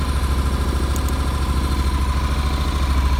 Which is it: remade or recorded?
recorded